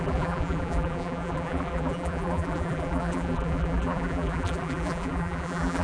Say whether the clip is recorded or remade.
remade